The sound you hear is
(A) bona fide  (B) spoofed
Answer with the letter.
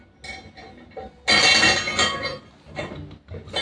A